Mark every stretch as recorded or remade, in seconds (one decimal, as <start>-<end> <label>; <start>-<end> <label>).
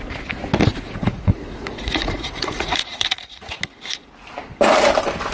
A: 0.0-0.7 recorded; 0.7-3.6 remade; 3.6-5.3 recorded